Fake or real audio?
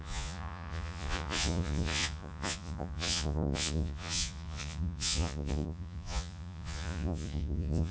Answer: fake